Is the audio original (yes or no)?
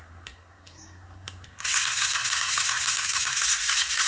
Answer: no